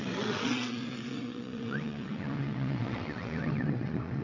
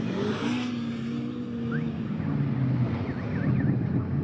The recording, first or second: second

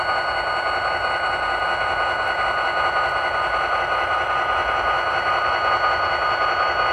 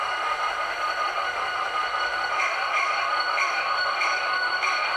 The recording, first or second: first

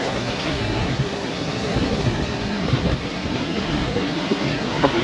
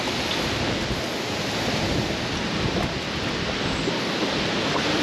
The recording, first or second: second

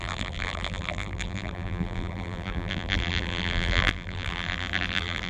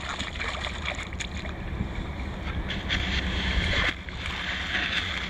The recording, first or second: second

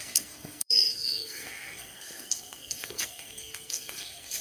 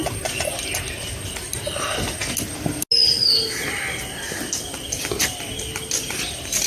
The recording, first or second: second